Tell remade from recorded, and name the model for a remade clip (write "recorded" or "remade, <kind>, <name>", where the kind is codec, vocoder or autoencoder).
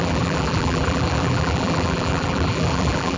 remade, vocoder, BigVGAN v2